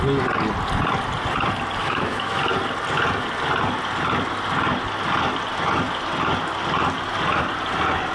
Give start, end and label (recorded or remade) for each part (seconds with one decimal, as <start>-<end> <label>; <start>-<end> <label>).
0.0-1.8 recorded; 1.8-2.4 remade; 2.4-8.1 recorded